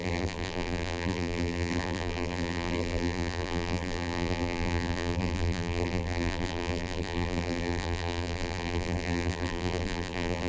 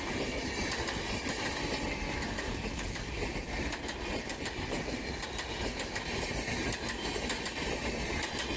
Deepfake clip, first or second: first